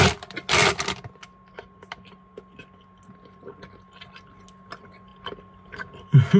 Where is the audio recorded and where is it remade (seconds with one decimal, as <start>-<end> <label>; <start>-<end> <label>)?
0.0-6.4 recorded